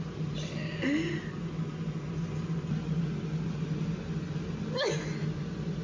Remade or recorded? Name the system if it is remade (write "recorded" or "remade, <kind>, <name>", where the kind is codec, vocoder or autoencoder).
recorded